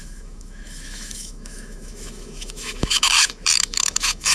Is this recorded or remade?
remade